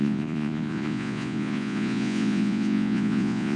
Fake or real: fake